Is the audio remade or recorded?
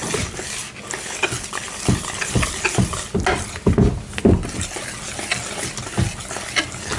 recorded